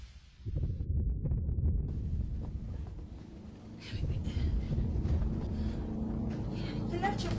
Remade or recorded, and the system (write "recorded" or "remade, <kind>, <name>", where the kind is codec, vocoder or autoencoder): recorded